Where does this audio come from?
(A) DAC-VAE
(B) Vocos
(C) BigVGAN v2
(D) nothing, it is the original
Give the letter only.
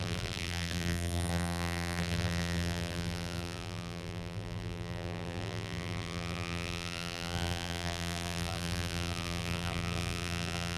C